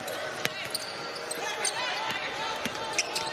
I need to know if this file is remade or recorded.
recorded